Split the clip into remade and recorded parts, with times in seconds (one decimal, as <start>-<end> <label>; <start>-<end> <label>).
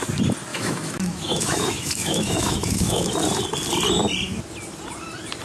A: 0.0-0.5 recorded; 0.5-3.1 remade; 3.1-5.4 recorded